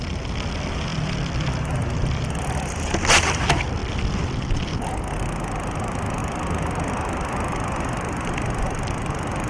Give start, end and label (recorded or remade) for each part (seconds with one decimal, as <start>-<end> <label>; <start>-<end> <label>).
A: 0.0-9.5 recorded